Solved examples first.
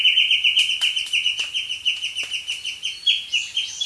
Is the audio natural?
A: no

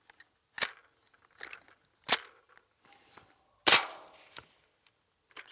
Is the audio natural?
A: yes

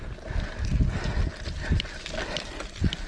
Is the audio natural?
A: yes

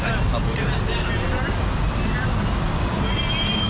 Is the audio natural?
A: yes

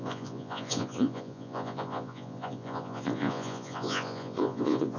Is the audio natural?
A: no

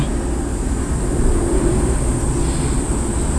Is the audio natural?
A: yes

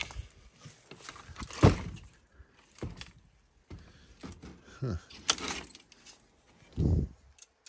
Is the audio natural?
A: yes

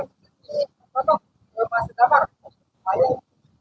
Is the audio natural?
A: yes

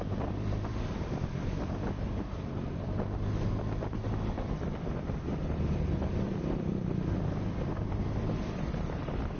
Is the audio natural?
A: no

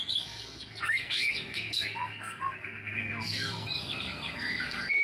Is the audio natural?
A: no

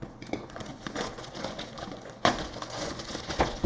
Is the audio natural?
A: no